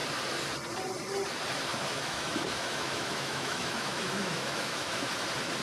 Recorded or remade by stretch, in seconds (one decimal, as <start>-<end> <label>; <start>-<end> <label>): 0.0-1.7 recorded; 1.7-5.1 remade; 5.1-5.6 recorded